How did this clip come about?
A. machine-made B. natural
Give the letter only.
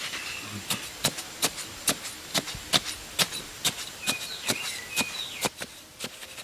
B